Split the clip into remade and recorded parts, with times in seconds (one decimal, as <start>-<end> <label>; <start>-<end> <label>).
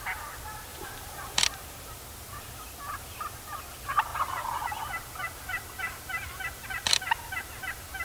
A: 0.0-0.7 recorded; 0.7-1.4 remade; 1.4-4.1 recorded; 4.1-4.8 remade; 4.8-5.5 recorded; 5.5-7.5 remade; 7.5-8.0 recorded